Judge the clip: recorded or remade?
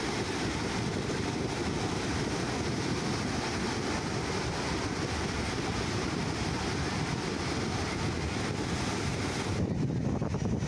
recorded